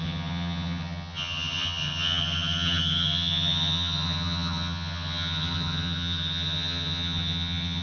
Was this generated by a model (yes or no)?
yes